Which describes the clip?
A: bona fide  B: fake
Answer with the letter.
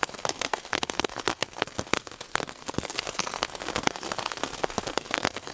B